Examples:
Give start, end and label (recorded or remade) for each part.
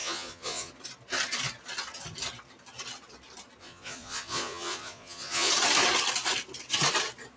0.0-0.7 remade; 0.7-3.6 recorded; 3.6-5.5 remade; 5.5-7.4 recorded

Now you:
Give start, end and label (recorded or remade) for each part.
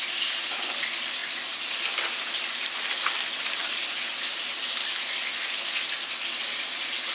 0.0-7.1 recorded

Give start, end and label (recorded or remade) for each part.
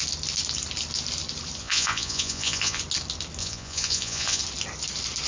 0.0-1.6 recorded; 1.6-2.8 remade; 2.8-3.4 recorded; 3.4-4.4 remade; 4.4-5.3 recorded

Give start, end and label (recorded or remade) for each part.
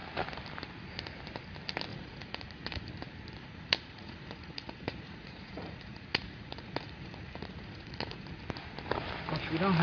0.0-1.9 recorded; 1.9-2.9 remade; 2.9-3.4 recorded; 3.4-8.4 remade; 8.4-9.8 recorded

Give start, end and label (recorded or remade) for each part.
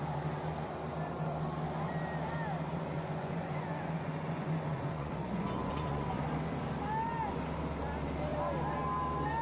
0.0-2.7 recorded; 2.7-6.2 remade; 6.2-9.4 recorded